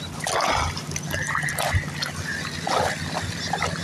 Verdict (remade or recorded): recorded